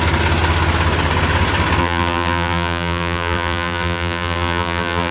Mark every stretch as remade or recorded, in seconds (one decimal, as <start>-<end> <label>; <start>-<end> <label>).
0.0-1.8 recorded; 1.8-5.1 remade